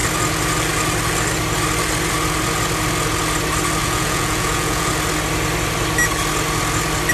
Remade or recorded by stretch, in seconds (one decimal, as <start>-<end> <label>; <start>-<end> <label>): 0.0-3.8 recorded; 3.8-4.9 remade; 4.9-7.1 recorded